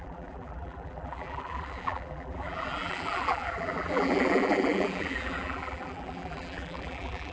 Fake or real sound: fake